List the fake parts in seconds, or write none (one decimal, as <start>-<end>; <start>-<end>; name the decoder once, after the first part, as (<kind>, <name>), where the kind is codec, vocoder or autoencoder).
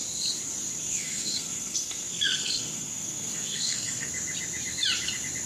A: 0.8-4.1 (codec, SNAC)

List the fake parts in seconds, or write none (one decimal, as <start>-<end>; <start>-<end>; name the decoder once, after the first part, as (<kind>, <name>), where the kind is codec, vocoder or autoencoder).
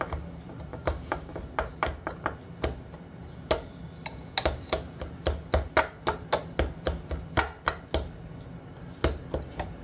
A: 0.7-1.4 (codec, DAC)